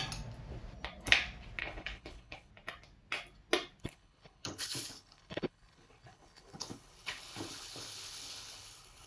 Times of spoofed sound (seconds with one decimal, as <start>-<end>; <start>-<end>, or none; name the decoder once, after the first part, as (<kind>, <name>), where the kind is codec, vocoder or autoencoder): 1.6-2.5 (codec, HILCodec); 3.8-9.1